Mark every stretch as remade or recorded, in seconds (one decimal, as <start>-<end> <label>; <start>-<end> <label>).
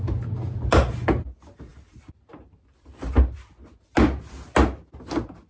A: 0.0-5.5 recorded